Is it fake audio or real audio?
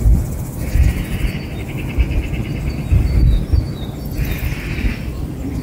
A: real